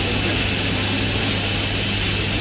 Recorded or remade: recorded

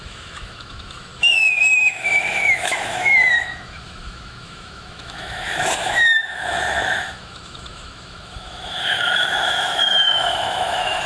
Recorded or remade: remade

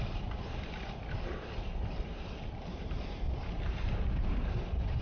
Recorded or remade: remade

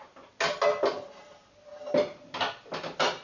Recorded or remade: recorded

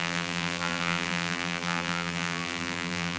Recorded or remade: remade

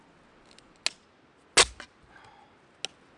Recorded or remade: recorded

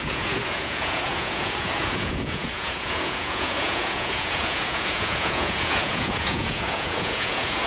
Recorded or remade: remade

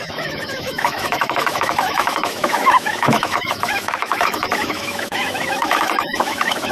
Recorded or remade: remade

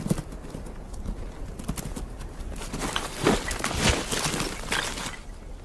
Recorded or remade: recorded